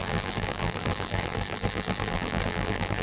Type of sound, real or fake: fake